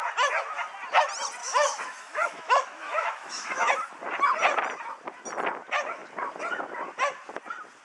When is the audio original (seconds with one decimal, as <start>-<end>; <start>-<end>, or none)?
0.0-1.4; 3.7-7.8